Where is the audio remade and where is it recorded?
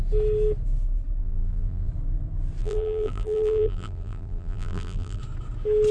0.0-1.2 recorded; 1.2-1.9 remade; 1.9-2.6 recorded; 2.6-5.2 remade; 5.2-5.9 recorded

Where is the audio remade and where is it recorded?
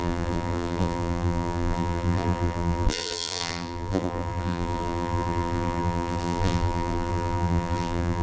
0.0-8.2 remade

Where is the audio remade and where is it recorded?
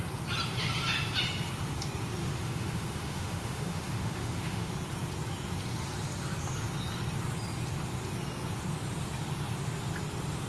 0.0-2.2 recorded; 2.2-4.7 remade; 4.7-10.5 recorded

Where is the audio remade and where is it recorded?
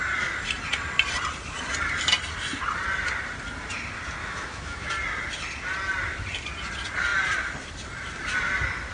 0.0-4.2 recorded; 4.2-4.9 remade; 4.9-8.9 recorded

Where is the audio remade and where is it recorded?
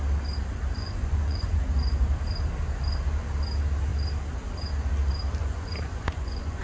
0.0-0.8 recorded; 0.8-1.6 remade; 1.6-5.4 recorded; 5.4-6.6 remade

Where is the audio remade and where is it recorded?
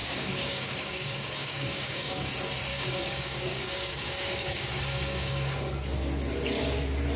0.0-2.3 remade; 2.3-2.7 recorded; 2.7-5.6 remade; 5.6-7.2 recorded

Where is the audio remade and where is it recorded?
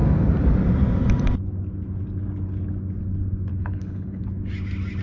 0.0-3.5 recorded; 3.5-4.2 remade; 4.2-5.0 recorded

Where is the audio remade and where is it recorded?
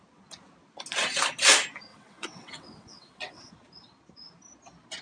0.0-1.9 recorded; 1.9-3.5 remade; 3.5-5.0 recorded